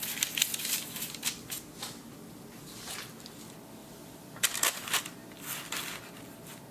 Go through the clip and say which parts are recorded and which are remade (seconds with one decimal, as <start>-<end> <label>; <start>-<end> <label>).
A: 0.0-3.8 recorded; 3.8-5.0 remade; 5.0-6.7 recorded